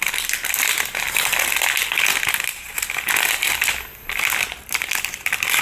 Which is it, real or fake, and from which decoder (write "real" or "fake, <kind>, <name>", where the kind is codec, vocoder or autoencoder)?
real